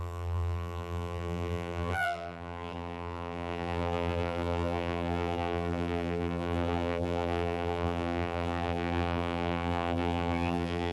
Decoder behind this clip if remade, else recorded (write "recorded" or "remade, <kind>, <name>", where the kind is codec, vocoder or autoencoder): remade, vocoder, BigVGAN v2